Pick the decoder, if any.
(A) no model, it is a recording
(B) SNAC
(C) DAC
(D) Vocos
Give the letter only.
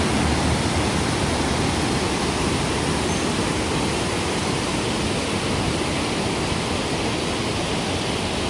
A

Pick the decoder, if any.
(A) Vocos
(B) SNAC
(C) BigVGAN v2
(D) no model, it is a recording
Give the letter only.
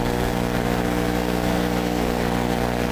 B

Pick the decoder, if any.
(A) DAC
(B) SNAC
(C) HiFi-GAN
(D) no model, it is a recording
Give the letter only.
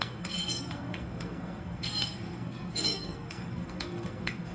B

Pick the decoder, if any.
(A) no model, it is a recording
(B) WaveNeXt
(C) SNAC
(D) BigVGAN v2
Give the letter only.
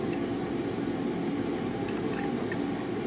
A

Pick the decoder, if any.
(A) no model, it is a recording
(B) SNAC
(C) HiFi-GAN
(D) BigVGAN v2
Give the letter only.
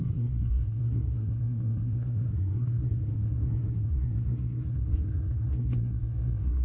B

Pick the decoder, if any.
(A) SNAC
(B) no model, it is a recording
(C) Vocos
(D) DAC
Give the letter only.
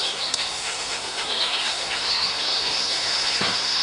A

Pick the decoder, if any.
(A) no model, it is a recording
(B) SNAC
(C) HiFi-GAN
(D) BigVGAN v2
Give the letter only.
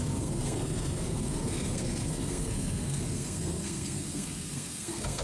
B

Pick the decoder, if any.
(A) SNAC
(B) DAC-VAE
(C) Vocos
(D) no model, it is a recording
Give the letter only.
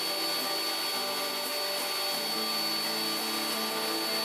D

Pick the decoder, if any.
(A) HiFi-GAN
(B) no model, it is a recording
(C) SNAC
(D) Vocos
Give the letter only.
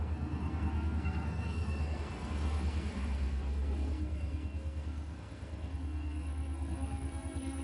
C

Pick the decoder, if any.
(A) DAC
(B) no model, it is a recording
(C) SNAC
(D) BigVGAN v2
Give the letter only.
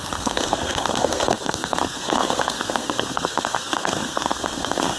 C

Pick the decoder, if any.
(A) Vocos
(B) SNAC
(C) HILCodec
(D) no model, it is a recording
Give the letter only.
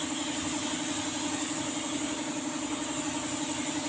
D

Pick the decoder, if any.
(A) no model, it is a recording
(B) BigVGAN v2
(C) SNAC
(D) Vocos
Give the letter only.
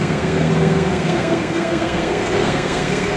C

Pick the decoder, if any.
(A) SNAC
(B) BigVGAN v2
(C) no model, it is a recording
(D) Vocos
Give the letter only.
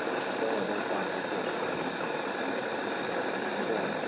C